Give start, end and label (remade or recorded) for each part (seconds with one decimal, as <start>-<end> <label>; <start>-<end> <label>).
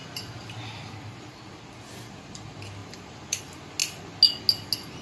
0.0-0.9 remade; 0.9-2.8 recorded; 2.8-3.4 remade; 3.4-5.0 recorded